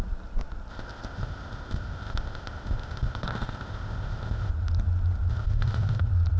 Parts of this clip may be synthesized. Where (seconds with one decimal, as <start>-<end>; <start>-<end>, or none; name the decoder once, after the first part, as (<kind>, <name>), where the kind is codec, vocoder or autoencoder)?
0.7-4.5 (codec, ZipCodec); 5.3-6.0